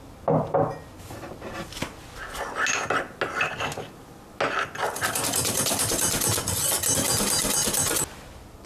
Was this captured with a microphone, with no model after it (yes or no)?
yes